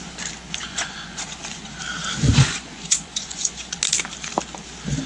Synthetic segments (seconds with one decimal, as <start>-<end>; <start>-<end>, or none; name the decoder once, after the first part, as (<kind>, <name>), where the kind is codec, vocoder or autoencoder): 0.6-1.8 (vocoder, Vocos); 2.2-3.8